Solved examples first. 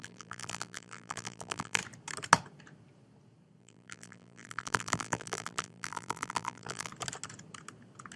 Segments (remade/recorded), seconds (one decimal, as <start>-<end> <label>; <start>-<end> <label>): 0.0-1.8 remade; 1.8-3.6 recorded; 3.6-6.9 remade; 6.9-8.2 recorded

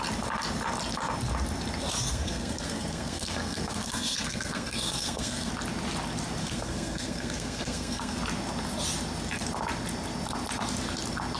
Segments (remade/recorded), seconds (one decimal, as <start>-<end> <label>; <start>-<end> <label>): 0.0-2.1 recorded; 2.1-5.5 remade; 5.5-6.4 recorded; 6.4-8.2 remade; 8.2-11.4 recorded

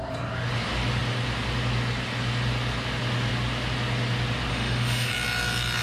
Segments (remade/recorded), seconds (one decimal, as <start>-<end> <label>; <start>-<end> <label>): 0.0-4.5 recorded; 4.5-5.1 remade; 5.1-5.8 recorded

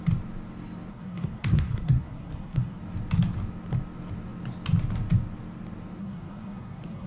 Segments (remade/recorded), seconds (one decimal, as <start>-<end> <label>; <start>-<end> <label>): 0.0-0.9 recorded; 0.9-2.8 remade; 2.8-6.0 recorded; 6.0-7.1 remade

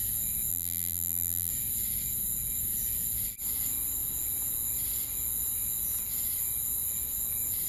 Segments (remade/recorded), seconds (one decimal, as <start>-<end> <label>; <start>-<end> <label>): 0.0-0.5 recorded; 0.5-1.5 remade; 1.5-7.7 recorded